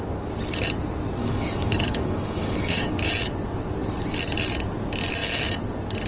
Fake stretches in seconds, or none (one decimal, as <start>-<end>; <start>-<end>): 1.2-3.1